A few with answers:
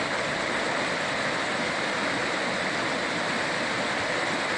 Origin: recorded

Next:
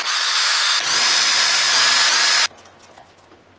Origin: recorded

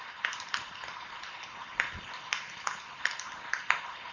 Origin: recorded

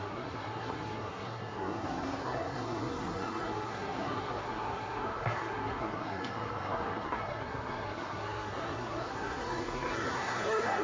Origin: remade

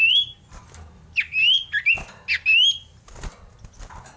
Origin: recorded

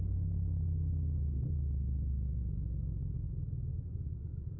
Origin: recorded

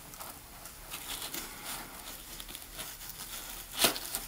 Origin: recorded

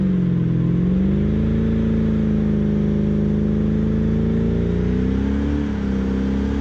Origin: recorded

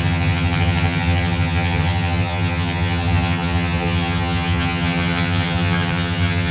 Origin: remade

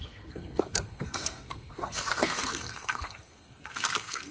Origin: remade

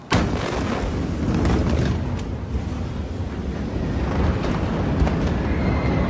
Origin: recorded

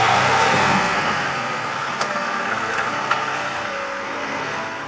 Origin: remade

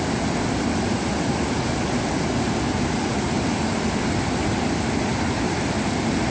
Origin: recorded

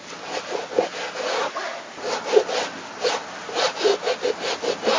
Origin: recorded